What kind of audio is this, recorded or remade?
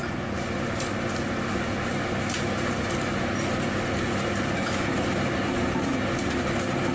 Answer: recorded